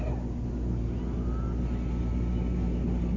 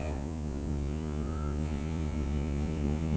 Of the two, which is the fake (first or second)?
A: second